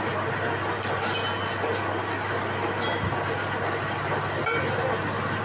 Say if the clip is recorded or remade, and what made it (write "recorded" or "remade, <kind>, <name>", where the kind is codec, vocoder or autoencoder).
recorded